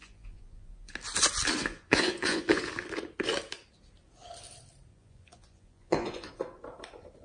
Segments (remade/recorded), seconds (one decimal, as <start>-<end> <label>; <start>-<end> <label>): 0.0-0.9 remade; 0.9-1.6 recorded; 1.6-2.6 remade; 2.6-4.9 recorded; 4.9-6.3 remade; 6.3-7.2 recorded